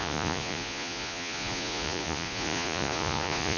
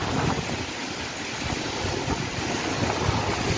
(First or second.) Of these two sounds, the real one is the second